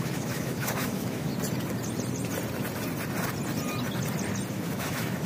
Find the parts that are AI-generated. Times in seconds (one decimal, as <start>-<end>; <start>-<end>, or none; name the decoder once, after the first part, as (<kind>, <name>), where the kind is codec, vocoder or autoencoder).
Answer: 0.0-1.3 (autoencoder, DAC-VAE); 4.5-5.3

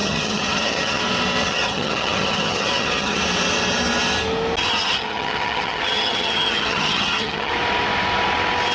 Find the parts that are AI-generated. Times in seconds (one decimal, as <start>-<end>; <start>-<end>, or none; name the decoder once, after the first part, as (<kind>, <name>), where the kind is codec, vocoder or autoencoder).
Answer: 0.0-1.0 (vocoder, HiFi-GAN); 1.4-3.2; 4.7-7.5

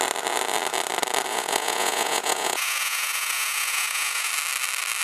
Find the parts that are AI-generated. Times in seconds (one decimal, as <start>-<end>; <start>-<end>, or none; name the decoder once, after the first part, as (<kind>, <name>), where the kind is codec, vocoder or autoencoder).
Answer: 1.3-4.3 (vocoder, Vocos)

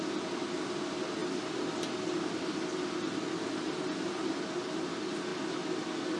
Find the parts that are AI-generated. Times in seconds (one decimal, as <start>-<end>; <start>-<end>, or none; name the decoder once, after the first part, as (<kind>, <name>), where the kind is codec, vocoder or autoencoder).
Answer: none

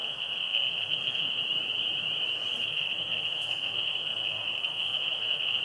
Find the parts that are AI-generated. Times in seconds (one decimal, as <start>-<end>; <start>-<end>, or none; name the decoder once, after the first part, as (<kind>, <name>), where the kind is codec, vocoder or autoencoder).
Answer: 0.0-1.4 (codec, SNAC); 2.6-5.6

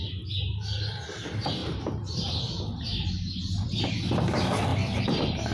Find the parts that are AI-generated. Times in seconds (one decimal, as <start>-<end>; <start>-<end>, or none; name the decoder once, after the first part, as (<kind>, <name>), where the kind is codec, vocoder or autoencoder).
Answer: 1.6-3.8 (vocoder, BigVGAN v2); 4.7-5.5